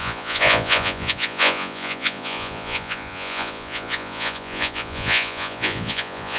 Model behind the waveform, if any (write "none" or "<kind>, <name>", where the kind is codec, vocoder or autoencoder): vocoder, Vocos